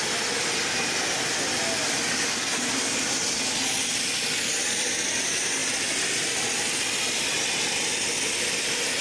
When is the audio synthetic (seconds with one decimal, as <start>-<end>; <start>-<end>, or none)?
5.6-6.6